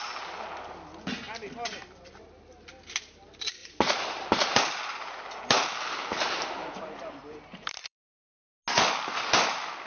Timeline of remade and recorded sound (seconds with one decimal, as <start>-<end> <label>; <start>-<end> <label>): 0.0-3.6 recorded; 3.6-4.6 remade; 4.6-6.6 recorded; 6.6-8.0 remade; 8.0-9.9 recorded